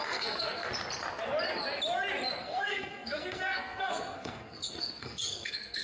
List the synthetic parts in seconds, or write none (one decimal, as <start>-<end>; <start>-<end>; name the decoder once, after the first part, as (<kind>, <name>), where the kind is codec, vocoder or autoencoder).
0.0-0.7 (codec, SNAC); 2.4-5.8